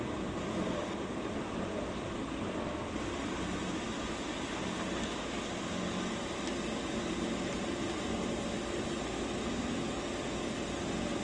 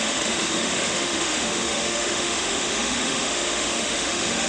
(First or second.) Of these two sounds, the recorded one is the first